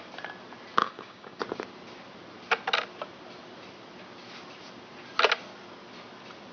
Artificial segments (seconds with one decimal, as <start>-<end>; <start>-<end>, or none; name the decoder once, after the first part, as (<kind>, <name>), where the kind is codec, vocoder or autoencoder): 0.8-1.4 (codec, DAC)